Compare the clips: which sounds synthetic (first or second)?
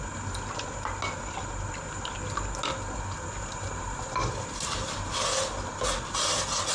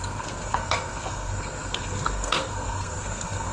second